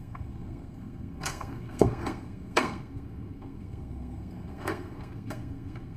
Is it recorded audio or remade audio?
remade